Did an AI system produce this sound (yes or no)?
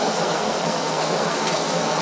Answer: yes